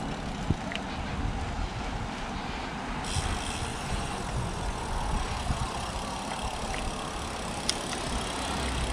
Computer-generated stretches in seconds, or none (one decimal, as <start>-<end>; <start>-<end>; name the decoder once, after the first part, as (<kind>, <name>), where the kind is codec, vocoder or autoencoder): 3.7-5.9 (vocoder, Vocos)